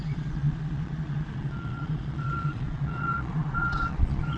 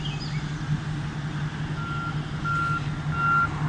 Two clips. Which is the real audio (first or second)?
second